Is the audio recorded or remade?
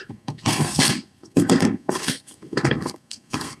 remade